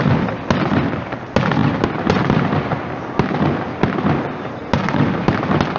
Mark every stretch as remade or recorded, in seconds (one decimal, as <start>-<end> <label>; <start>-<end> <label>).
0.0-5.8 recorded